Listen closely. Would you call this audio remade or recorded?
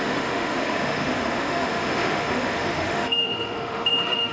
remade